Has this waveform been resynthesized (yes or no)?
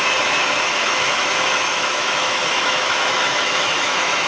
yes